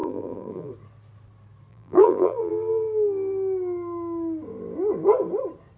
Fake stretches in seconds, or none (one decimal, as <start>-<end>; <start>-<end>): 0.0-0.7; 1.7-2.5